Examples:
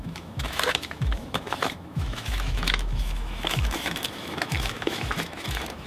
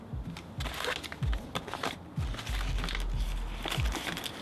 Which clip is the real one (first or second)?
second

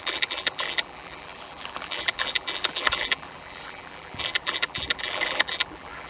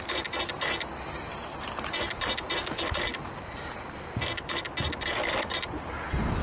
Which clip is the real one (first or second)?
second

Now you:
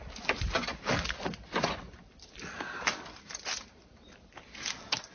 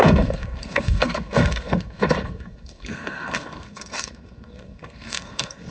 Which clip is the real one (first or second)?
first